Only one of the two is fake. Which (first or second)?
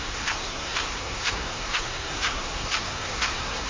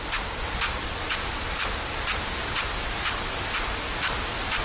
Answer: first